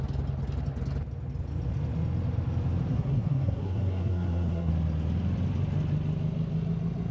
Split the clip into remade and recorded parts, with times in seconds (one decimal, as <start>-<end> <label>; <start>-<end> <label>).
0.0-2.9 recorded; 2.9-4.7 remade; 4.7-7.1 recorded